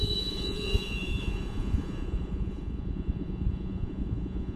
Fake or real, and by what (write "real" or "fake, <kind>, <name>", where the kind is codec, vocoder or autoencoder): fake, vocoder, Vocos